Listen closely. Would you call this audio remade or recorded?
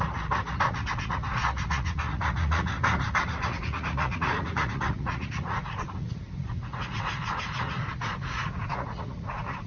remade